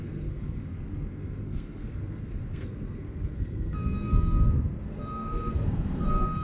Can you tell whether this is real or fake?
fake